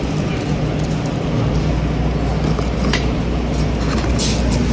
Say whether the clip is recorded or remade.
recorded